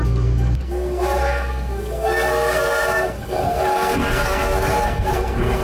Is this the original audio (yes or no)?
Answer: no